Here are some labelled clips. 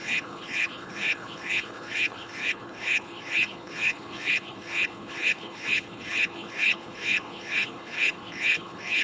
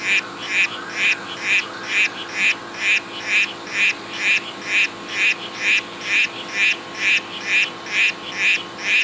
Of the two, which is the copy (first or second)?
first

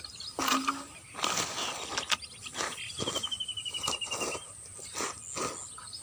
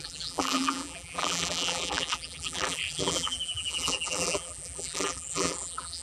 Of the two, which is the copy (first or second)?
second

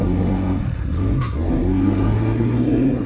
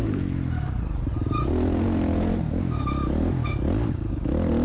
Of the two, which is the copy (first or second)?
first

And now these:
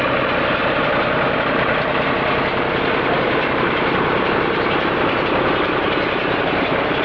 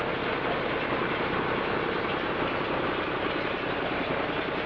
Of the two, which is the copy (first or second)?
first